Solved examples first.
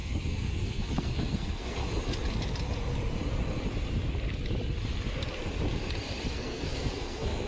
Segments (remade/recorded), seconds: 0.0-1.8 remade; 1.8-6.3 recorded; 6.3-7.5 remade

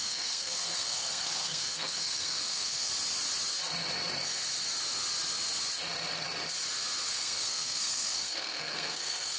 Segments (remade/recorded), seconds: 0.0-2.9 remade; 2.9-7.1 recorded; 7.1-9.4 remade

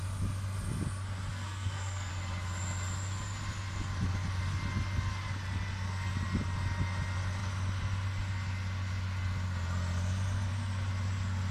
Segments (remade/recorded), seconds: 0.0-1.3 recorded; 1.3-2.1 remade; 2.1-11.5 recorded

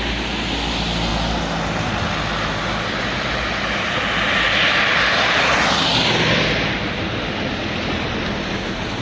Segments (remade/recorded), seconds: 0.0-9.0 recorded

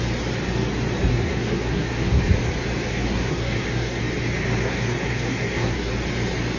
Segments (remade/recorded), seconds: 0.0-1.1 recorded; 1.1-2.2 remade; 2.2-2.9 recorded; 2.9-4.0 remade; 4.0-4.6 recorded; 4.6-5.9 remade; 5.9-6.6 recorded

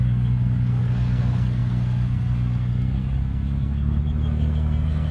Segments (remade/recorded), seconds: 0.0-5.1 remade

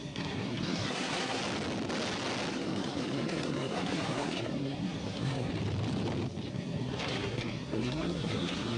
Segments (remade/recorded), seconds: 0.0-1.4 remade; 1.4-2.5 recorded; 2.5-5.5 remade; 5.5-6.5 recorded; 6.5-8.8 remade